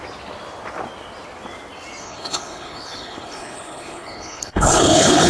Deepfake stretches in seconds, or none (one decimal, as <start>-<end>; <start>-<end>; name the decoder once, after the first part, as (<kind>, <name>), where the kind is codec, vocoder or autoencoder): 2.0-5.3 (codec, HILCodec)